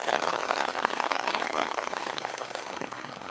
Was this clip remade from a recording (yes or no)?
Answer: yes